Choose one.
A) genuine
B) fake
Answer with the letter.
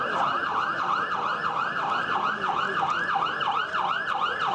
A